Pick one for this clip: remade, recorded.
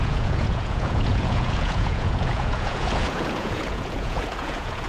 remade